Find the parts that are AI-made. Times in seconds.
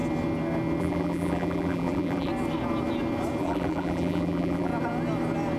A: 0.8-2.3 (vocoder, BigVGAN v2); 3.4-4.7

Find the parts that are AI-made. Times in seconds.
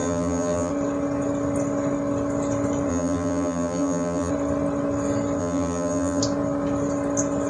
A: 0.0-0.7 (vocoder, BigVGAN v2); 2.9-4.3; 5.4-6.2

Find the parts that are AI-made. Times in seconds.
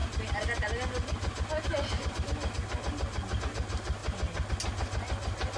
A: none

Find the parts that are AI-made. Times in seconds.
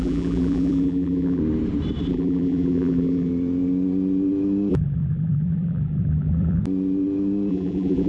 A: 0.0-1.4 (vocoder, BigVGAN v2); 2.1-3.3; 4.7-6.6; 7.5-8.1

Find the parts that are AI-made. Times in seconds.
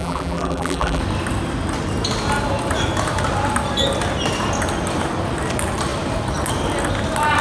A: 0.0-1.0 (vocoder, BigVGAN v2)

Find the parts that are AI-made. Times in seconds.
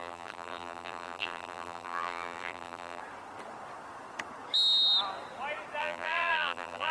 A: 0.0-3.0 (vocoder, BigVGAN v2); 5.8-6.9